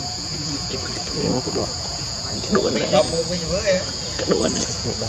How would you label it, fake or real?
fake